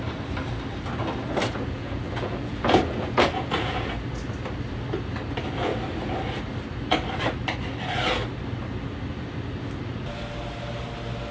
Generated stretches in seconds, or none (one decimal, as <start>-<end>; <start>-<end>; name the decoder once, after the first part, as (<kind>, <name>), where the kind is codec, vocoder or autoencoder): 1.4-3.9 (vocoder, Vocos)